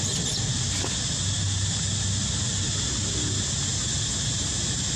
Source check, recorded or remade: recorded